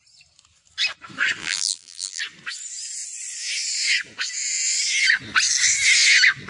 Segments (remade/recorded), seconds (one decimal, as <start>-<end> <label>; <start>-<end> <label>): 0.0-1.4 recorded; 1.4-2.2 remade; 2.2-6.5 recorded